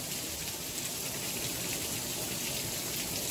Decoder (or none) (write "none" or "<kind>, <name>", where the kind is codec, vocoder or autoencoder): none